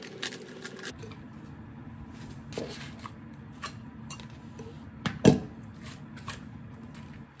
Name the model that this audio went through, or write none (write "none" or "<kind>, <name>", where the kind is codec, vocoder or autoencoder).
none